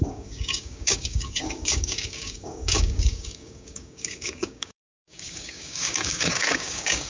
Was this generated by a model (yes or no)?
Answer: yes